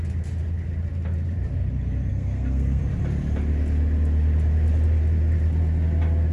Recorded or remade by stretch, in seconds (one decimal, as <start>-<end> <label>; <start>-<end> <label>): 0.0-2.1 recorded; 2.1-2.8 remade; 2.8-6.3 recorded